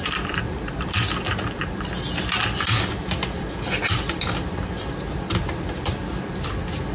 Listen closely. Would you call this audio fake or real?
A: real